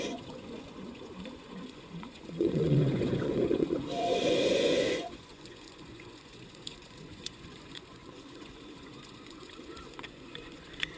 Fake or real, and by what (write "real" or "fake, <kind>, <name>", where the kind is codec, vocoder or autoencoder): fake, vocoder, Vocos